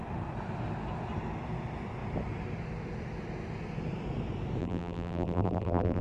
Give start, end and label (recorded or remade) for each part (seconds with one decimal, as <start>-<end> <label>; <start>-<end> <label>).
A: 0.0-4.6 recorded; 4.6-6.0 remade

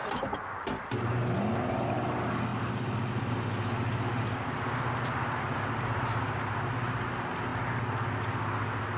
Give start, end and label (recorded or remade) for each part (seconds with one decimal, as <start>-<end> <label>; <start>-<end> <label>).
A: 0.0-1.3 remade; 1.3-5.5 recorded; 5.5-6.6 remade; 6.6-9.0 recorded

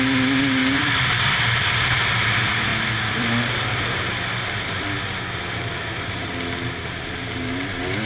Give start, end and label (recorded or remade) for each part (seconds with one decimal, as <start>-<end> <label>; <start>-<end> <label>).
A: 0.0-0.6 recorded; 0.6-1.7 remade; 1.7-8.1 recorded

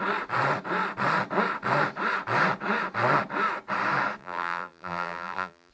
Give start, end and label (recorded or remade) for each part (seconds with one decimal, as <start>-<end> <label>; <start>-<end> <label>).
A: 0.0-4.2 recorded; 4.2-5.7 remade

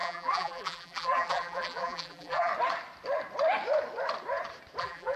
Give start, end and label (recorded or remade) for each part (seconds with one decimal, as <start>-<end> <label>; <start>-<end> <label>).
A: 0.0-2.5 remade; 2.5-4.8 recorded; 4.8-5.2 remade

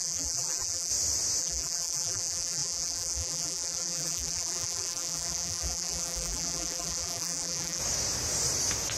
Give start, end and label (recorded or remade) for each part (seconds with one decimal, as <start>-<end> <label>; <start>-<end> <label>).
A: 0.0-0.9 remade; 0.9-1.4 recorded; 1.4-7.8 remade; 7.8-9.0 recorded